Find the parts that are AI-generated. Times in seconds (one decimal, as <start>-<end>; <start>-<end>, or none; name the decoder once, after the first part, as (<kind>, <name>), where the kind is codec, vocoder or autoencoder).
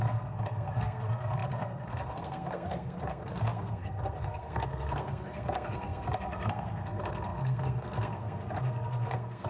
0.0-9.5 (codec, SNAC)